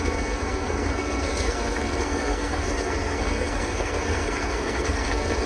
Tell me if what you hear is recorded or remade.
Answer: remade